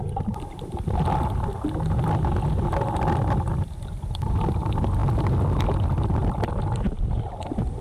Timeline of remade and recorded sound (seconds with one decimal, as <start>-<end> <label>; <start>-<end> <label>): 0.0-7.8 recorded